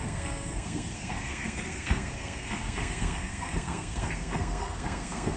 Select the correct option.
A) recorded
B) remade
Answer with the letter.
B